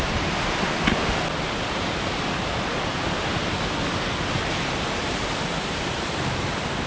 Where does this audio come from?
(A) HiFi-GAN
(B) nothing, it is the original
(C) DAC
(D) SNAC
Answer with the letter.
B